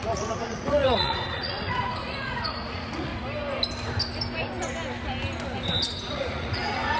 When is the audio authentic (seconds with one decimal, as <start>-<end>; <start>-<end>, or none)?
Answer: 3.1-6.1